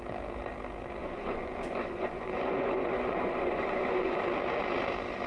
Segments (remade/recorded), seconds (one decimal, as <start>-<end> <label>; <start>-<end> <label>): 0.0-1.0 recorded; 1.0-4.2 remade; 4.2-5.3 recorded